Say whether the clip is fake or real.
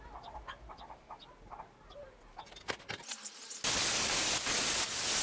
real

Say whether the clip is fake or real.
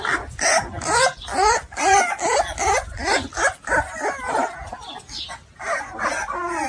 real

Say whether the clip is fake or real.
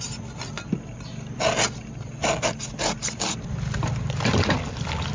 real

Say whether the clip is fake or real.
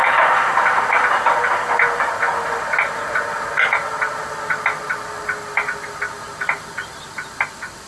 real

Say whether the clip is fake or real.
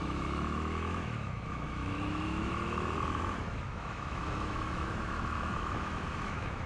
fake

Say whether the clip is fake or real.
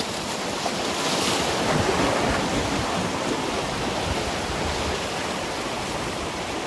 real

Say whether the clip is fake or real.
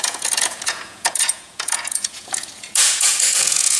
fake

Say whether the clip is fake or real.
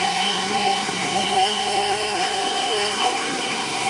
fake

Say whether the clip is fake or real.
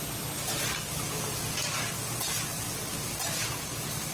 real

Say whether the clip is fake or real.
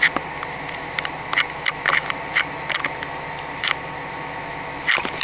real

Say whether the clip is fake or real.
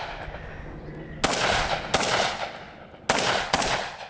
real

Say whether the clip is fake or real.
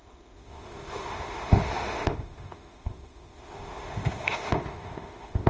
fake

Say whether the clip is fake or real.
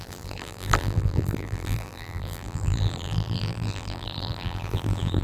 fake